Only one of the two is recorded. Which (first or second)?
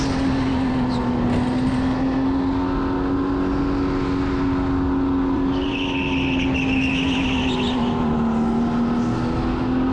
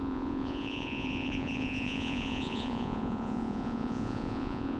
first